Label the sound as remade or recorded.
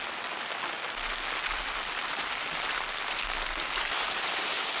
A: recorded